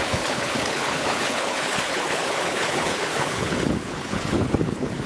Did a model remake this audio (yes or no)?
yes